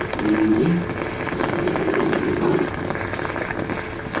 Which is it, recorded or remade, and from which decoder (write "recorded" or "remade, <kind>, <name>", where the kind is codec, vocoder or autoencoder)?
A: recorded